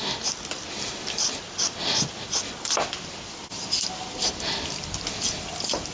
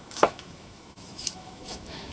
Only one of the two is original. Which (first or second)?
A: first